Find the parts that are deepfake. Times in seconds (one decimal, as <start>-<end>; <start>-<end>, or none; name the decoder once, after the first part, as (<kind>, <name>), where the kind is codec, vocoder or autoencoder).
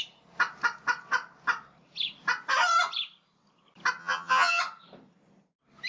4.0-4.6 (vocoder, HiFi-GAN)